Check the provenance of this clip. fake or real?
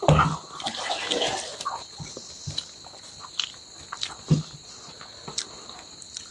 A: real